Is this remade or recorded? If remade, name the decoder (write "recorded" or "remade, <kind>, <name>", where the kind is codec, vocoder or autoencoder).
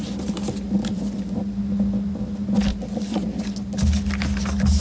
recorded